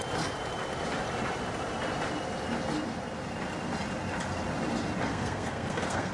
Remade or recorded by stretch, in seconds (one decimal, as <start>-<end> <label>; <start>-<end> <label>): 0.0-5.1 recorded; 5.1-6.1 remade